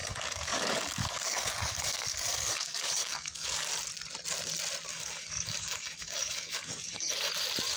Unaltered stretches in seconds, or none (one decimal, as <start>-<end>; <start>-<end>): 3.7-4.9; 7.3-7.8

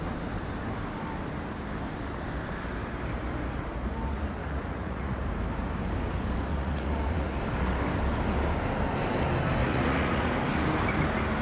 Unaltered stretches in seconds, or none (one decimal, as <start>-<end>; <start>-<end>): 0.0-4.4; 5.2-6.5; 7.4-9.6; 10.3-11.4

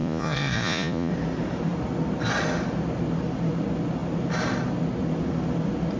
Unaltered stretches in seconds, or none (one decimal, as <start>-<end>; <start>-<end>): 1.1-6.0

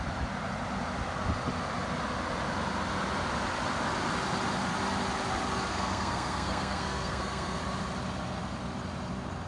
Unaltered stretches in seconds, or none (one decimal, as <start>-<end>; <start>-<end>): 0.0-5.7; 7.6-9.5

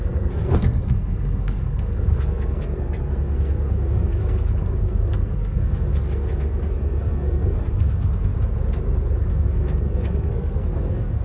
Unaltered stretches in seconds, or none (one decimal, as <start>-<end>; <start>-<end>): 8.3-9.3

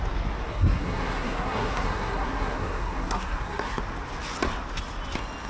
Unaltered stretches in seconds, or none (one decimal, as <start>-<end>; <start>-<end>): 0.0-0.5; 3.8-5.5

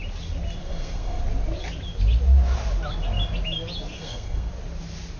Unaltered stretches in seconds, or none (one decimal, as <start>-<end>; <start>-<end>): 0.0-0.6; 1.2-3.9; 4.5-5.2